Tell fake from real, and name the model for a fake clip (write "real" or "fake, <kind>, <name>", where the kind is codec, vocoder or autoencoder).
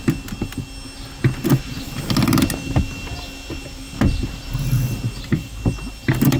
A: real